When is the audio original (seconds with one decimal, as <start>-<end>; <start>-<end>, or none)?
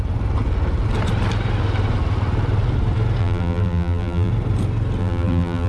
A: 0.0-3.2; 4.3-5.0